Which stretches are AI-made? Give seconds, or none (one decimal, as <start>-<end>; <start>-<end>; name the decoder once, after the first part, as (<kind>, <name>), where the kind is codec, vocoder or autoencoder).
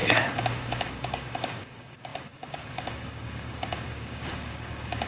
0.0-5.1 (codec, DAC)